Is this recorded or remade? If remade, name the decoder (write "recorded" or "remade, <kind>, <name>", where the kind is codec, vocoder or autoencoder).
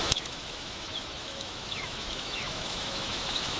remade, autoencoder, DAC-VAE